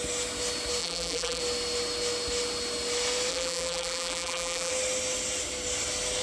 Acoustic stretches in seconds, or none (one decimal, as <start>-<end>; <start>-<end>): 0.0-0.8; 1.4-3.3; 4.7-6.2